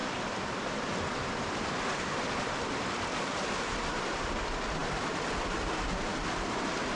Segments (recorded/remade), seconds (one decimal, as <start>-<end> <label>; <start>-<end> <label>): 0.0-3.2 remade; 3.2-7.0 recorded

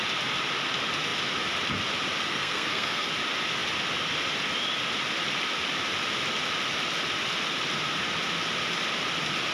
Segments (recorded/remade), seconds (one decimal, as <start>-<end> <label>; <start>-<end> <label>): 0.0-2.3 recorded; 2.3-3.1 remade; 3.1-9.5 recorded